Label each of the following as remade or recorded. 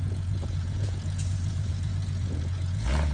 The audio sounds remade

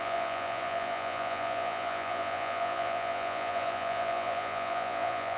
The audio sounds remade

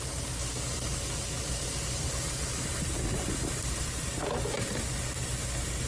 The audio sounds recorded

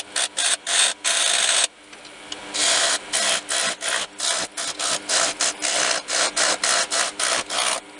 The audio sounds recorded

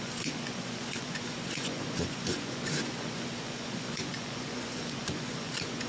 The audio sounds remade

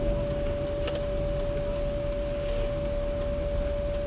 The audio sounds recorded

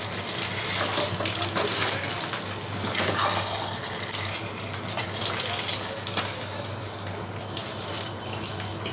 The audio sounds recorded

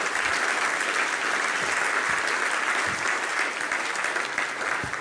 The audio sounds recorded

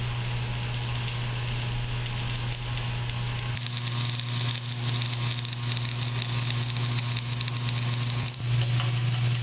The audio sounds recorded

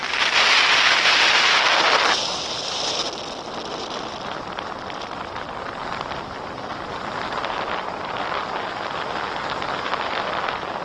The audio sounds recorded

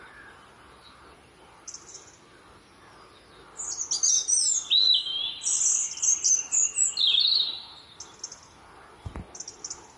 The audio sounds recorded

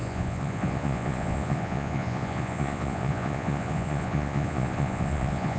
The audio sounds remade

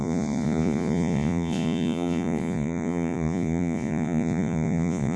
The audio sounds remade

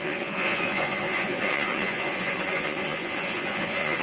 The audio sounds remade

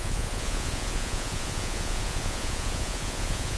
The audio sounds remade